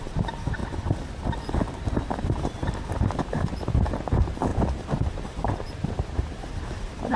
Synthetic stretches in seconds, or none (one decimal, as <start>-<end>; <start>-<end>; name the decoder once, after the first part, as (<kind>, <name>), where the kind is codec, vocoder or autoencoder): 0.0-0.6 (vocoder, BigVGAN v2); 1.9-4.5; 5.1-7.2